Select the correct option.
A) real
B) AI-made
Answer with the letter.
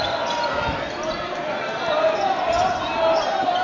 A